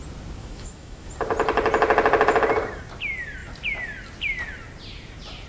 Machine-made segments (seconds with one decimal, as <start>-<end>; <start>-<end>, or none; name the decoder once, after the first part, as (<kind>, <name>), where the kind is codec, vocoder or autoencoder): 0.4-1.1 (autoencoder, DAC-VAE)